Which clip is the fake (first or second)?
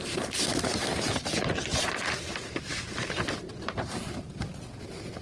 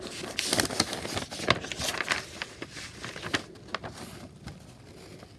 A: first